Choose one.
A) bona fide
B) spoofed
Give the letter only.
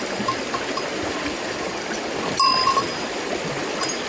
B